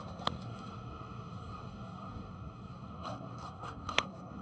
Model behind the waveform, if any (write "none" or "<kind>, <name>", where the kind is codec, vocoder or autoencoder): codec, SNAC